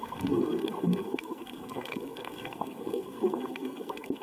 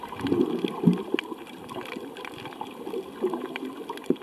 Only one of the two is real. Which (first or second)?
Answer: second